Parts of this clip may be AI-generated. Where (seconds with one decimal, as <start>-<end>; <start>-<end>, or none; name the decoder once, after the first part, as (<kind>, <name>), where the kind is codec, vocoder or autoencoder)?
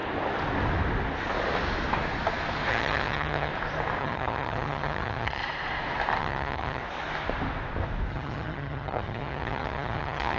2.7-3.5 (vocoder, HiFi-GAN); 4.0-5.4; 6.2-6.8; 8.1-10.4